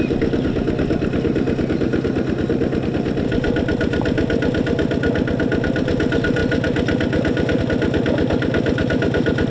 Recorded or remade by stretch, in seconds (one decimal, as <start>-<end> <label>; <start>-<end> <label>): 0.0-9.5 recorded